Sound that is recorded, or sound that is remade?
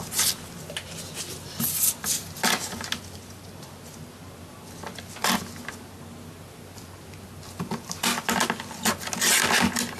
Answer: recorded